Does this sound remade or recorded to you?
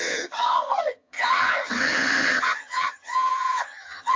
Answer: remade